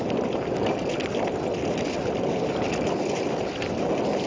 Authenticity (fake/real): real